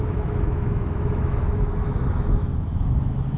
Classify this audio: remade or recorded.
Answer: remade